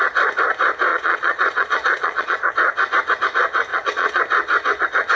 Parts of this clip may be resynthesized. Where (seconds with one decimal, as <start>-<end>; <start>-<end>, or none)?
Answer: 0.9-2.5; 3.7-4.2